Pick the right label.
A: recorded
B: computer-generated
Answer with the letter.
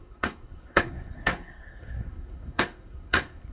B